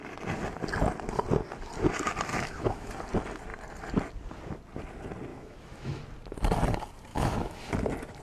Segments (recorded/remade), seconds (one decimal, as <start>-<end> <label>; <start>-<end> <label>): 0.0-2.3 recorded; 2.3-2.9 remade; 2.9-5.3 recorded; 5.3-6.0 remade; 6.0-7.1 recorded; 7.1-7.7 remade; 7.7-8.2 recorded